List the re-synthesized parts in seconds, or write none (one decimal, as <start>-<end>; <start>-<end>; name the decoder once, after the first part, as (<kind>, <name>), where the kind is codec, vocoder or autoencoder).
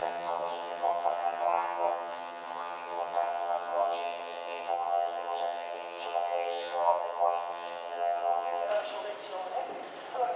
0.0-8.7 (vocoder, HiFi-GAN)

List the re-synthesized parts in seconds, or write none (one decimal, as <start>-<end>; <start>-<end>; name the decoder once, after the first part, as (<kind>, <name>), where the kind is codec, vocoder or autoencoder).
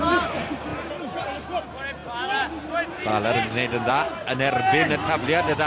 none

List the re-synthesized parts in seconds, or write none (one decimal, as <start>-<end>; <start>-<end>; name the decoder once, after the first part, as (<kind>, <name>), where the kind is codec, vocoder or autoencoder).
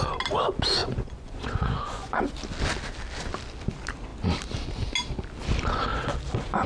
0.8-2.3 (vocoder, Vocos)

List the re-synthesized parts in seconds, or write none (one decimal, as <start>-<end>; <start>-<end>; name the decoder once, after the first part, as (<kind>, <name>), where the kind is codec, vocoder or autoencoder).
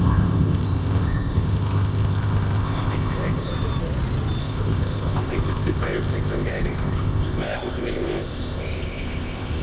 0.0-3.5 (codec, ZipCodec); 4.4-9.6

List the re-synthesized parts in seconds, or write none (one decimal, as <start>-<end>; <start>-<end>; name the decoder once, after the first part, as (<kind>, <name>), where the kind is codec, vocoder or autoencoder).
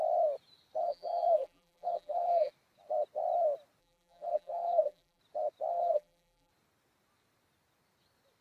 0.8-2.5 (vocoder, BigVGAN v2); 3.8-5.2; 5.7-6.5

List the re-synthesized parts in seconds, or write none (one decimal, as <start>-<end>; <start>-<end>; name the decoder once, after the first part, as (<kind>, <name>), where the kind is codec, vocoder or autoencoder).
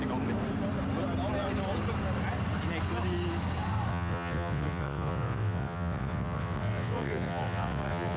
3.9-8.2 (vocoder, WaveNeXt)